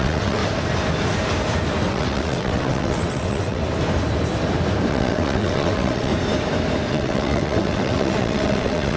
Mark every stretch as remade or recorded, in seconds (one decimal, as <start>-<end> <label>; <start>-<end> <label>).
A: 0.0-0.4 remade; 0.4-1.9 recorded; 1.9-3.6 remade; 3.6-4.9 recorded; 4.9-6.1 remade; 6.1-6.9 recorded; 6.9-9.0 remade